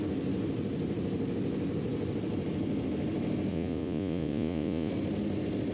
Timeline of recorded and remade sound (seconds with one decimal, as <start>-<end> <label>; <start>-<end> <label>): 0.0-3.5 recorded; 3.5-4.9 remade; 4.9-5.7 recorded